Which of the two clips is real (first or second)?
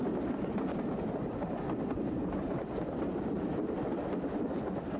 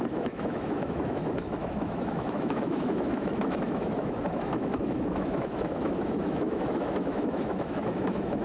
first